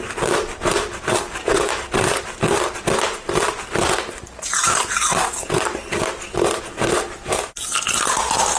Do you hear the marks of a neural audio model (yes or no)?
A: yes